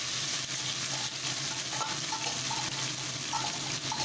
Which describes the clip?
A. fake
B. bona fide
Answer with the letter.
B